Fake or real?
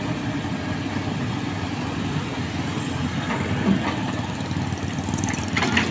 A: real